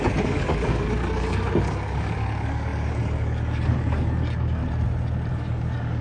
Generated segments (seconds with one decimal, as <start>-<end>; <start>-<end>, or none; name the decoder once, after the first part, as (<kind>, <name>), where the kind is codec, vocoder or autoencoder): 0.0-4.6 (codec, DAC); 5.3-6.0